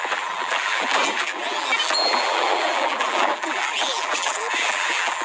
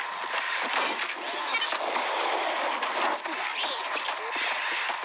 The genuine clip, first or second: second